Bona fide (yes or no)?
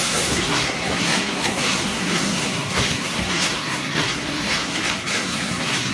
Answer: no